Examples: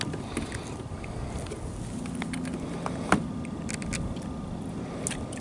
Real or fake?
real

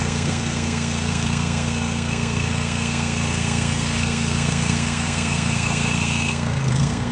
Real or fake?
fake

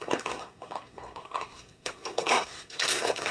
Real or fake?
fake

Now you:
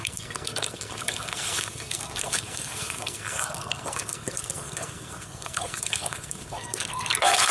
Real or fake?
fake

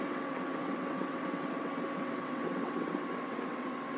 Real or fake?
fake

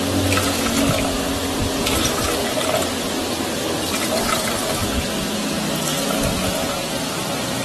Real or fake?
real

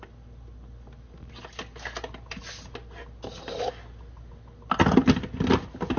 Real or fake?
real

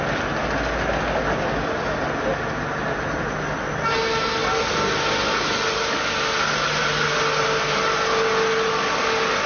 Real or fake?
real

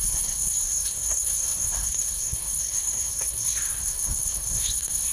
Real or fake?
fake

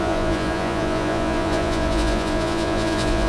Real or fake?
fake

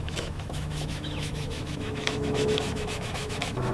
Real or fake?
fake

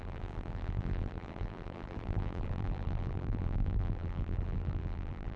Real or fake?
fake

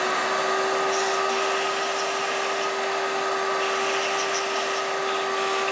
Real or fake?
real